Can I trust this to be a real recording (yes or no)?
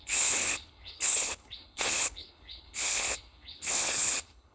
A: no